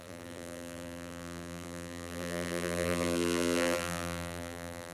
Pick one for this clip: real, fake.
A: fake